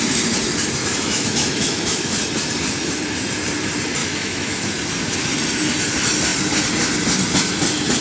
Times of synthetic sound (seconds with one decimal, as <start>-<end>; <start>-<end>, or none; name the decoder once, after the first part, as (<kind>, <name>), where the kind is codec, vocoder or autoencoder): 0.8-2.2 (autoencoder, DAC-VAE); 4.0-4.8